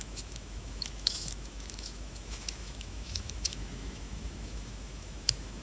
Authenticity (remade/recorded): remade